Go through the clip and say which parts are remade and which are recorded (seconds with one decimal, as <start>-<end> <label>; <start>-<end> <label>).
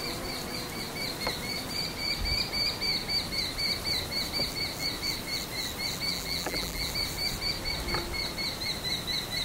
0.0-6.1 recorded; 6.1-6.9 remade; 6.9-9.4 recorded